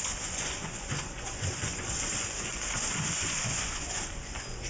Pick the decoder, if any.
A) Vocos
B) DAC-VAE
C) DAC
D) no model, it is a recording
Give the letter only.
A